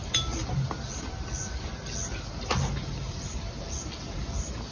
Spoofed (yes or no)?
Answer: no